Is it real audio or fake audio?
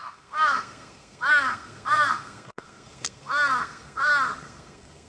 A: fake